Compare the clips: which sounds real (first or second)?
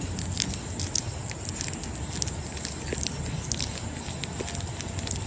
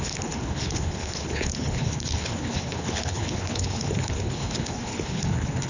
first